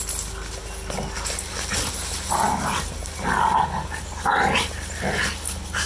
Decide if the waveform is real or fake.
real